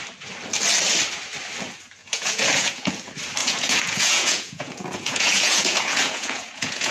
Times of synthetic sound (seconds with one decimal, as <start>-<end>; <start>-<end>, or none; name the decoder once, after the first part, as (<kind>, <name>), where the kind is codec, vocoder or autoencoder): 2.0-2.9 (vocoder, Vocos); 3.4-6.9